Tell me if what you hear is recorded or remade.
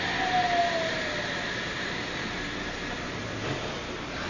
recorded